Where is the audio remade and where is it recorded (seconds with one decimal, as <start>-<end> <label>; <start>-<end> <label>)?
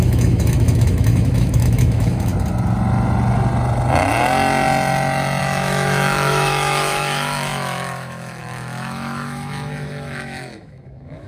0.0-2.3 remade; 2.3-5.4 recorded; 5.4-11.3 remade